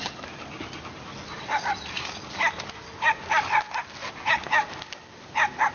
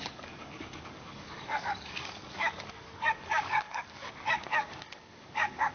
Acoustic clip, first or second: first